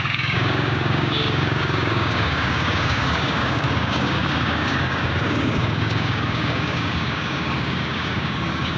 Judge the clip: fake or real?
fake